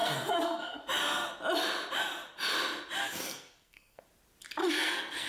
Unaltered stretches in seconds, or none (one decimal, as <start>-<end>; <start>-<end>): 0.8-3.0; 4.0-4.6